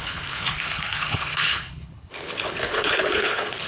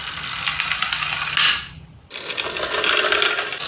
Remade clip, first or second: first